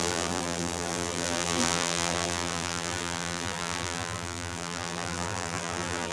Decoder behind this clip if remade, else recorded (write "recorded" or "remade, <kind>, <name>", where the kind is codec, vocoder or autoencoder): remade, vocoder, BigVGAN v2